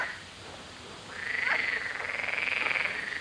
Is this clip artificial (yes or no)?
yes